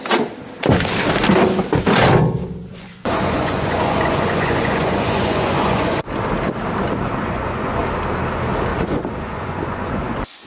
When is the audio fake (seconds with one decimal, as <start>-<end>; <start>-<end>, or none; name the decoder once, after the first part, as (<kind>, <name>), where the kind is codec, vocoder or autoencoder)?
2.7-6.1 (vocoder, Vocos); 7.1-7.8; 8.7-10.5